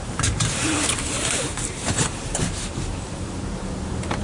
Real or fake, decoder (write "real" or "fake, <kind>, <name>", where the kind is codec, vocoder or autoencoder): fake, vocoder, BigVGAN v2